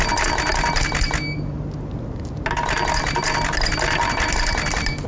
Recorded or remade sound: recorded